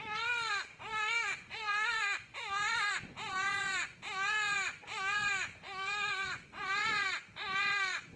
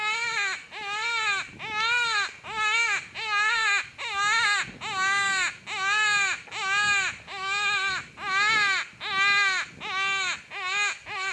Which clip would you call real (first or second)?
second